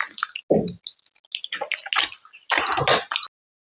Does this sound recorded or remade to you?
recorded